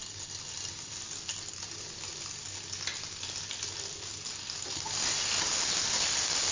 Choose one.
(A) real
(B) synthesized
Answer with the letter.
A